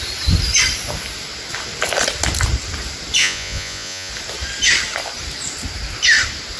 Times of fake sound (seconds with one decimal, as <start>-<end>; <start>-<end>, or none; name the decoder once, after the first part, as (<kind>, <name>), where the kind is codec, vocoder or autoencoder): 3.2-4.1 (vocoder, Vocos)